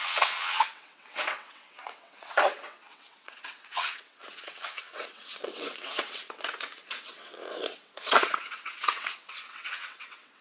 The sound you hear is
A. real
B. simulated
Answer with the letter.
B